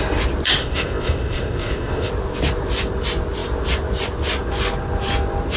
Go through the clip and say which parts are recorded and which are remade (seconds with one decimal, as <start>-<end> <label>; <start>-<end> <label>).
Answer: 0.0-0.6 recorded; 0.6-2.1 remade; 2.1-5.6 recorded